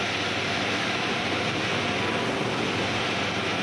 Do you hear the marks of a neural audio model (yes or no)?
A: no